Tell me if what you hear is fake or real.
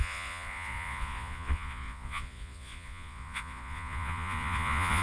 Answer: fake